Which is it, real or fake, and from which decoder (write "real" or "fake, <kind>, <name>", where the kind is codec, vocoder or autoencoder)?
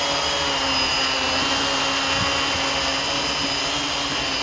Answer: real